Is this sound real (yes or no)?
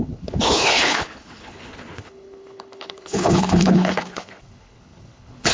no